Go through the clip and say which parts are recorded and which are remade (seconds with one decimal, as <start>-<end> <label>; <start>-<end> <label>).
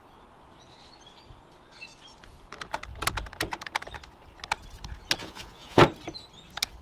0.0-5.2 recorded; 5.2-5.8 remade; 5.8-6.8 recorded